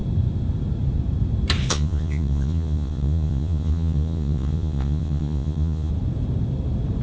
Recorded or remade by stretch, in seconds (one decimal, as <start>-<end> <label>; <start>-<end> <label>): 0.0-1.7 recorded; 1.7-5.9 remade; 5.9-7.0 recorded